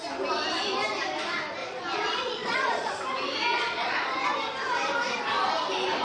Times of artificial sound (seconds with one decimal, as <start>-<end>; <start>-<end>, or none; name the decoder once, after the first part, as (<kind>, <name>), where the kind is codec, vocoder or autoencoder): 1.6-2.9 (vocoder, Vocos); 3.5-4.3